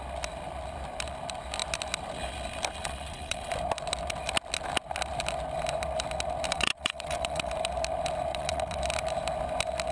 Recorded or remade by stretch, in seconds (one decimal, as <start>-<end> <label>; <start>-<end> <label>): 0.0-2.8 recorded; 2.8-3.5 remade; 3.5-6.5 recorded; 6.5-7.5 remade; 7.5-8.3 recorded; 8.3-8.8 remade; 8.8-9.9 recorded